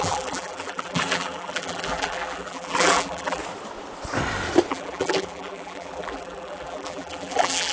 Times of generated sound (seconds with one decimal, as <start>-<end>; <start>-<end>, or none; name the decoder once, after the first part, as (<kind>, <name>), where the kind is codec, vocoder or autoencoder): 0.0-3.4 (vocoder, BigVGAN v2); 4.7-7.7